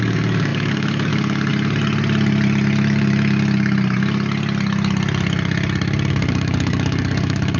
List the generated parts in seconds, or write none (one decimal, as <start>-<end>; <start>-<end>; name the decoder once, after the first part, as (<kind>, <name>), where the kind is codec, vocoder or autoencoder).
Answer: 0.0-1.5 (codec, DAC); 6.1-7.6